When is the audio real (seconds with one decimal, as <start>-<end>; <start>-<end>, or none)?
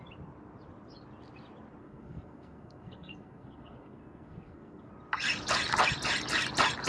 0.0-1.8; 4.9-6.9